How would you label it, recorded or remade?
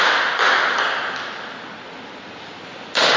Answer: recorded